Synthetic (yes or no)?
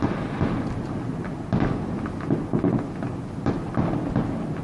no